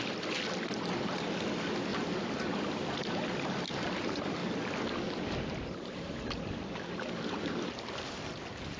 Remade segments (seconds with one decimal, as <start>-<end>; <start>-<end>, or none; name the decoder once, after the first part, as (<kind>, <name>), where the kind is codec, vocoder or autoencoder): none